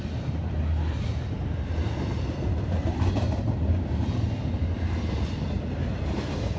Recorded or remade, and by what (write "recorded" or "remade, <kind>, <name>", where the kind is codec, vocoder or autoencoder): recorded